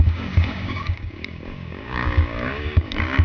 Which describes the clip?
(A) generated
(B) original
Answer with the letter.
A